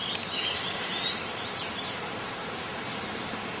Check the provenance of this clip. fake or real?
real